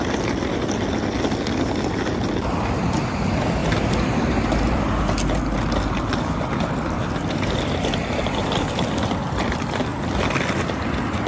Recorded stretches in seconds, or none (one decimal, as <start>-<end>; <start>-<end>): 0.0-3.6; 4.9-9.9